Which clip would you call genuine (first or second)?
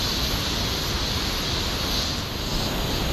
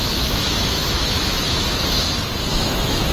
first